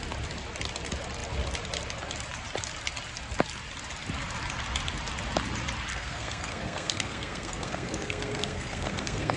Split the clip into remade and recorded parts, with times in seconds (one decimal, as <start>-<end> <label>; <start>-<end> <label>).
0.0-5.9 recorded; 5.9-9.4 remade